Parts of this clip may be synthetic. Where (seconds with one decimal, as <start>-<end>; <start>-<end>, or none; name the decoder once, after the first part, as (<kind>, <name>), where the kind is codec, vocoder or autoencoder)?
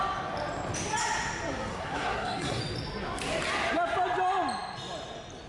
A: 1.7-2.6 (codec, SNAC)